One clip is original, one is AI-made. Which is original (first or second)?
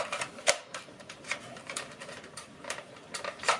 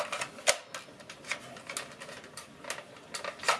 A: second